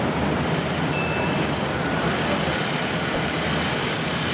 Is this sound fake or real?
real